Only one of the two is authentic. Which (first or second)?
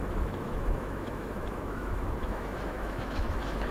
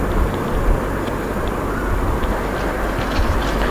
second